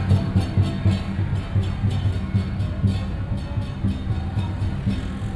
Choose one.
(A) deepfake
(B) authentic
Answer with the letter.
B